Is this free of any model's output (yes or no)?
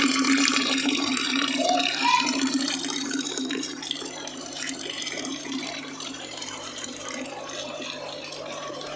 no